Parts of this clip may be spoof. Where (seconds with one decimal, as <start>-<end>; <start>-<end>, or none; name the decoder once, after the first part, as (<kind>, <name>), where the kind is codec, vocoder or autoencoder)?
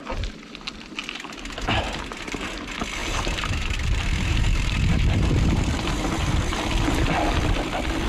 3.0-6.6 (vocoder, BigVGAN v2)